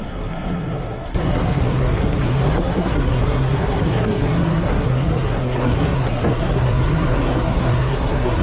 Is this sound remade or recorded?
remade